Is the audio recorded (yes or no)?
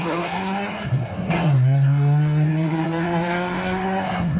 no